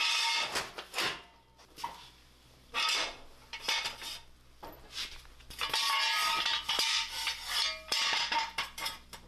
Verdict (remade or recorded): recorded